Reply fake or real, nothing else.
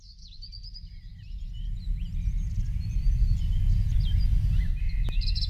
real